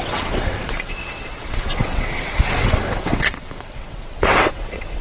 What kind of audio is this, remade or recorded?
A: remade